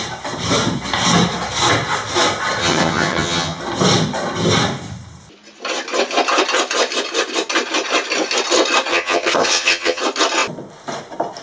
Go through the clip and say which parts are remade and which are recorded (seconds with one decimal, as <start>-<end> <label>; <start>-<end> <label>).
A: 0.0-2.6 recorded; 2.6-3.6 remade; 3.6-8.9 recorded; 8.9-10.0 remade; 10.0-11.4 recorded